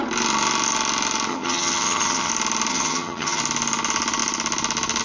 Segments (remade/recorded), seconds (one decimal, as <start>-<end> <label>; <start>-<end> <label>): 0.0-1.3 recorded; 1.3-2.3 remade; 2.3-2.7 recorded; 2.7-3.4 remade; 3.4-5.0 recorded